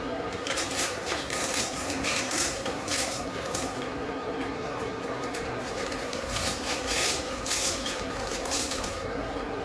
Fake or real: fake